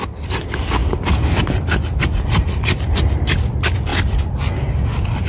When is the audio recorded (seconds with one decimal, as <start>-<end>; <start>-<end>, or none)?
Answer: 0.0-5.3

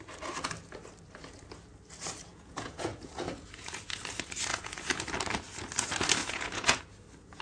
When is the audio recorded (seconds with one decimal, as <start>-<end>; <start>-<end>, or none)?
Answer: 0.0-2.3; 3.8-4.5; 5.0-6.2; 6.8-7.4